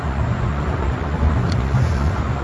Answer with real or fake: fake